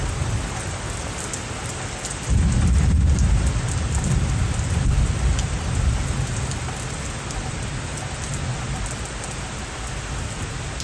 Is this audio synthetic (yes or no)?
no